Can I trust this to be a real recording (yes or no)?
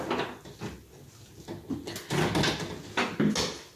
yes